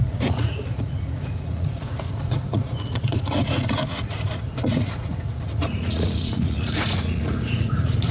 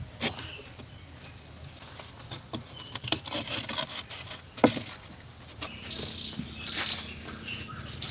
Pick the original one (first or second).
second